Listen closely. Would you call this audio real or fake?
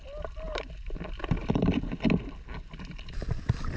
real